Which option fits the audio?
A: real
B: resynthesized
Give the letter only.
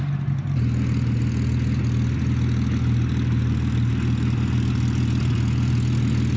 A